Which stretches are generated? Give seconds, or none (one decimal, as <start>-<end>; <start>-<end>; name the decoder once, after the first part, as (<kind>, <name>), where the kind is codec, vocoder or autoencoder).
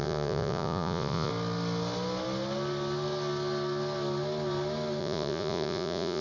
0.0-1.3 (vocoder, Vocos); 5.0-6.2